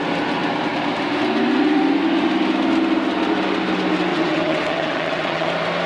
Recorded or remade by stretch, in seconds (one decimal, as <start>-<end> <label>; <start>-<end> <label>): 0.0-4.1 recorded; 4.1-5.5 remade; 5.5-5.9 recorded